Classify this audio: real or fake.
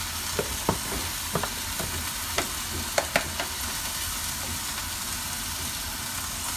real